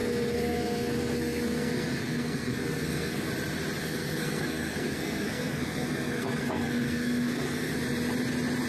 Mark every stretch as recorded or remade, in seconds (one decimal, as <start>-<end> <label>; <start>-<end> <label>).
0.0-3.3 remade; 3.3-3.8 recorded; 3.8-7.7 remade; 7.7-8.7 recorded